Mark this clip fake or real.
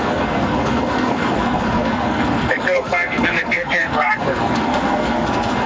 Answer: fake